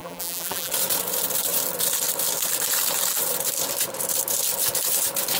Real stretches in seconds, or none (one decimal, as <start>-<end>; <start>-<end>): 0.7-5.4